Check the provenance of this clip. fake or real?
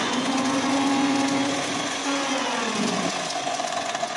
fake